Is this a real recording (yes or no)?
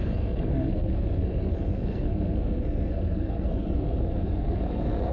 no